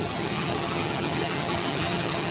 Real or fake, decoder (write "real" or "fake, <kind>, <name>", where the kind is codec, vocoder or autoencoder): fake, vocoder, HiFi-GAN